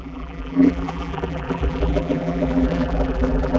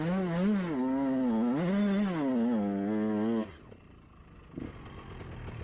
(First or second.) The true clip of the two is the second